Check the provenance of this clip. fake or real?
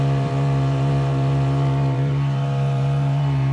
fake